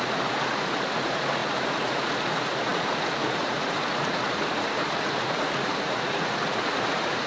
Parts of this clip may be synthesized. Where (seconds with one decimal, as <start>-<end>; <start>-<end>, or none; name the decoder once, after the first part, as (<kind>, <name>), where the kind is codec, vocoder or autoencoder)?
0.0-7.3 (vocoder, Vocos)

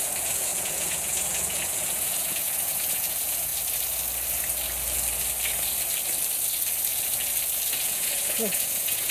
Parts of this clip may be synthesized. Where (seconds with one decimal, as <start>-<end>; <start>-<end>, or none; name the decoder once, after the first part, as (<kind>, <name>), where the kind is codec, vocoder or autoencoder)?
0.0-3.5 (vocoder, Vocos); 7.7-9.1